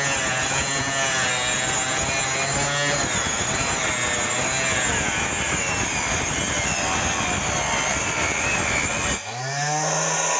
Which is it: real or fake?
real